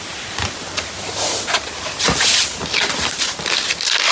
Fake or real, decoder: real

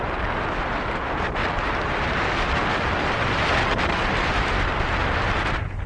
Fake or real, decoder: real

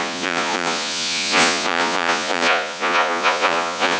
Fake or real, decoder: fake, vocoder, Vocos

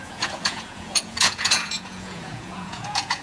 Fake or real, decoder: fake, vocoder, Vocos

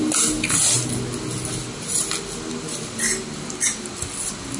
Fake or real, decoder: real